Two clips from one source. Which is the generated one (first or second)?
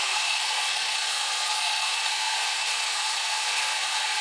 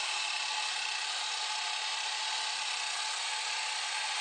first